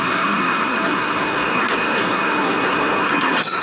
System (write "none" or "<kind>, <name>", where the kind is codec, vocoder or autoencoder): codec, SNAC